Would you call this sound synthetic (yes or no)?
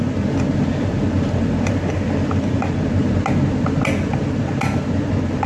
no